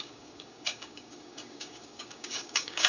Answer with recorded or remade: remade